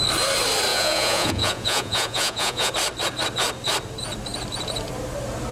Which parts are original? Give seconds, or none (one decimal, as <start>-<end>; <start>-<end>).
0.0-0.7; 2.7-5.5